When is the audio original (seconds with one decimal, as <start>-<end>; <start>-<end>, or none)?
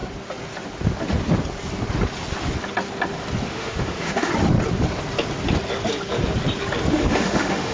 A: 0.0-3.5; 4.3-6.9